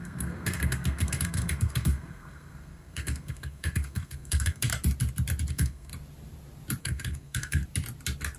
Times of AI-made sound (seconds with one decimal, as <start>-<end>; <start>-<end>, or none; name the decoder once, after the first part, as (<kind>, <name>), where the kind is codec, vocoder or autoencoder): 0.0-4.7 (codec, SNAC); 5.5-5.9; 6.8-7.6